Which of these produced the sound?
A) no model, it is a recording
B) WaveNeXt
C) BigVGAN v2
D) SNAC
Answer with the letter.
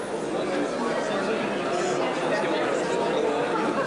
A